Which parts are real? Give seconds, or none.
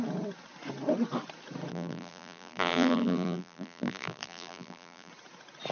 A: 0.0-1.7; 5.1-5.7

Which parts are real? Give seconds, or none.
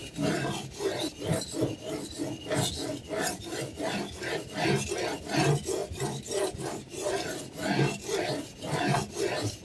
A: 0.8-5.8; 7.1-9.6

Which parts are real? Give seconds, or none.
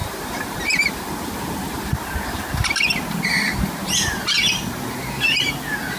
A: 1.9-6.0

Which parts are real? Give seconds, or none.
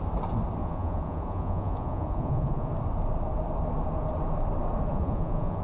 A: 0.0-0.6; 2.7-4.9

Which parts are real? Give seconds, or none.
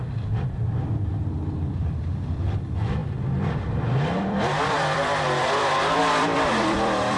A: none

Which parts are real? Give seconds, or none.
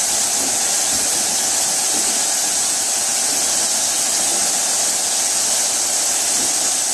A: 0.0-6.9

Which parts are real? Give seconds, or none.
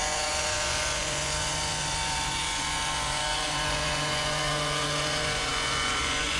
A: none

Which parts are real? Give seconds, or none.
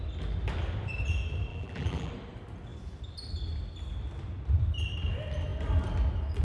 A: 0.0-1.5; 2.1-6.4